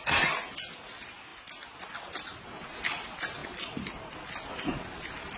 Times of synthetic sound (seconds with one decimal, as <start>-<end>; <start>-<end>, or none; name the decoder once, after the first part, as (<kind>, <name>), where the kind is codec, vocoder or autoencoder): none

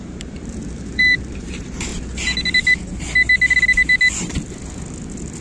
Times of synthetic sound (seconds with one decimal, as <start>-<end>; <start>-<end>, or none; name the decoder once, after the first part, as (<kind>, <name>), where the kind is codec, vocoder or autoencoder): 0.0-1.9 (vocoder, BigVGAN v2)